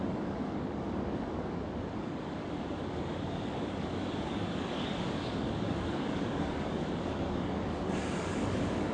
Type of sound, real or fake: fake